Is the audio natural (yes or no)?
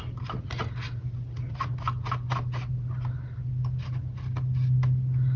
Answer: yes